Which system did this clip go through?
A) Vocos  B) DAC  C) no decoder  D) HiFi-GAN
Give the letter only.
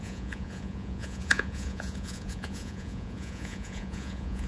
A